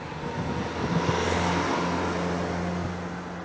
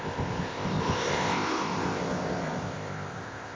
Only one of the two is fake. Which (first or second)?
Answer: second